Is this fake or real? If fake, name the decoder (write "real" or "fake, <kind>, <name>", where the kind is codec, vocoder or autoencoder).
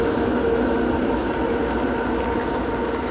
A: real